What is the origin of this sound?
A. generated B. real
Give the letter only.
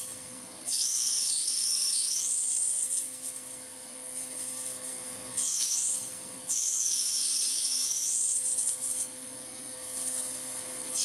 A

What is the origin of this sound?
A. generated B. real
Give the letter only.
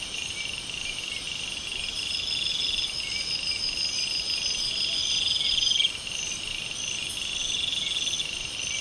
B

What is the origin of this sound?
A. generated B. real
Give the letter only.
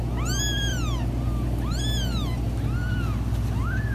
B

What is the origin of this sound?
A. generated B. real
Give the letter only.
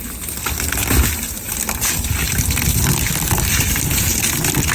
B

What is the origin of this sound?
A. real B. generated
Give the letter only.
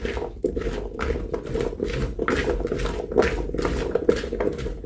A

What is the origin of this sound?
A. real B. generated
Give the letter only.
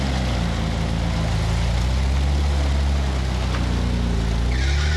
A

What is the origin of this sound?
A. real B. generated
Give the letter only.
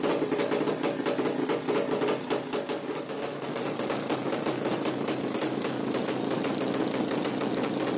A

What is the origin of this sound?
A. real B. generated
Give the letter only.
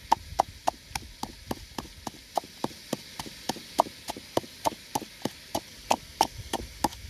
A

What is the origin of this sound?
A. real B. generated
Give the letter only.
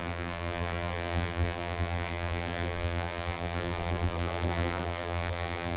B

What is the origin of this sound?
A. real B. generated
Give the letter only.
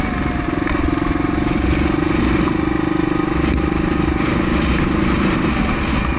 A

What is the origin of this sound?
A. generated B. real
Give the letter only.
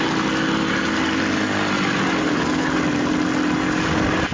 B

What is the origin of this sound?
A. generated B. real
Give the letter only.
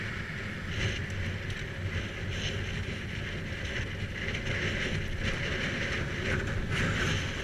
B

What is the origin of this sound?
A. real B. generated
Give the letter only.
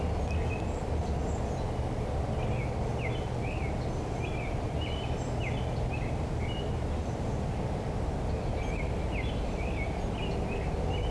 A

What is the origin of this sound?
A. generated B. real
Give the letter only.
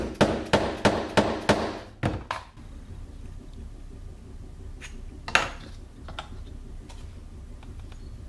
B